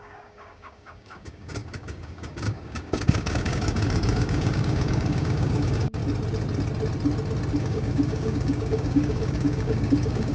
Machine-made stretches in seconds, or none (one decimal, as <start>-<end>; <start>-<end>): 0.0-6.0; 7.6-10.3